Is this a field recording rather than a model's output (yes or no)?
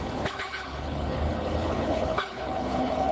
no